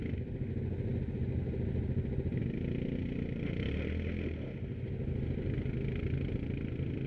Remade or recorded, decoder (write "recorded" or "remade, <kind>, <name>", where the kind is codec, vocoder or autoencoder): recorded